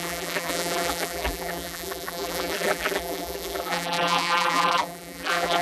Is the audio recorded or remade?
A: remade